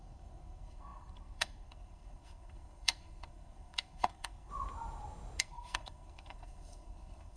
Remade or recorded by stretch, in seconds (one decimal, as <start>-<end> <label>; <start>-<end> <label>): 0.0-4.5 remade; 4.5-5.4 recorded; 5.4-7.4 remade